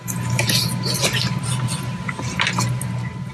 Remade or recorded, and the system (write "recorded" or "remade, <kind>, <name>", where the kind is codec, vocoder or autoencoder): recorded